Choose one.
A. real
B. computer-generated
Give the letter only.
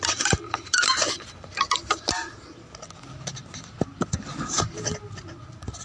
A